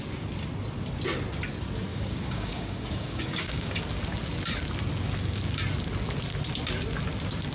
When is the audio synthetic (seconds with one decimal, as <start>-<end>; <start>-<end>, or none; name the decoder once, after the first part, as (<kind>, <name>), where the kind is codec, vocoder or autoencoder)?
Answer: 1.9-3.8 (codec, DAC)